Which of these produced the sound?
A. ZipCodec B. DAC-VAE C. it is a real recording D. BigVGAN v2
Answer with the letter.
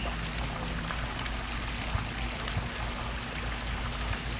C